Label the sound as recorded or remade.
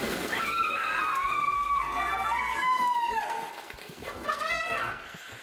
remade